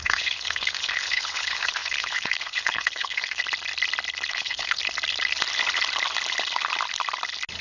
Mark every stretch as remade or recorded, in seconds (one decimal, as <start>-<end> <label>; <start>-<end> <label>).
0.0-3.4 remade; 3.4-4.3 recorded; 4.3-4.8 remade; 4.8-7.6 recorded